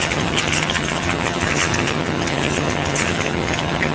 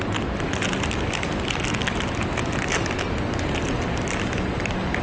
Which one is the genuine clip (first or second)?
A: second